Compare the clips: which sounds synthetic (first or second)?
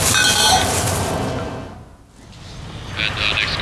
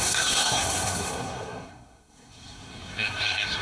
second